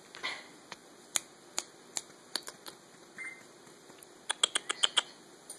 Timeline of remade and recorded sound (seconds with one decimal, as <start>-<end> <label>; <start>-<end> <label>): 0.0-5.6 recorded